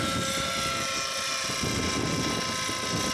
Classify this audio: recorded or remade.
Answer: recorded